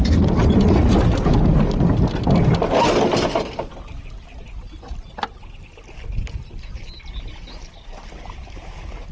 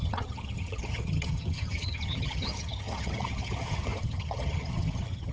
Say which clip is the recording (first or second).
first